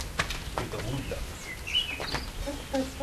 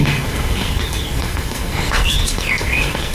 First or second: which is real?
first